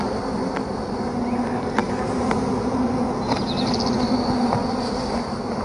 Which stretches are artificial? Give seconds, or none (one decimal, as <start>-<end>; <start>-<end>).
1.8-2.9